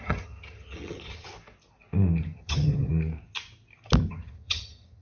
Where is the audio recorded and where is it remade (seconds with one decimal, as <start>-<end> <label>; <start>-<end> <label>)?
0.0-1.3 remade; 1.3-2.2 recorded; 2.2-2.9 remade; 2.9-4.1 recorded; 4.1-5.0 remade